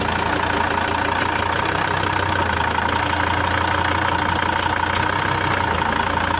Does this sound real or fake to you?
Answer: real